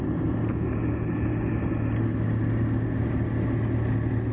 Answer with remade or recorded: recorded